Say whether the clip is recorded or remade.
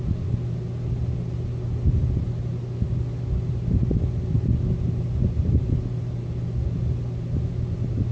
recorded